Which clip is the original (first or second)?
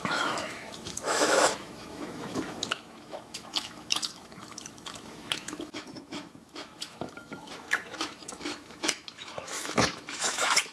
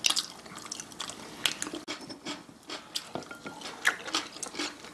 second